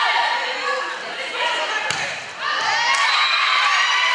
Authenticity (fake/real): real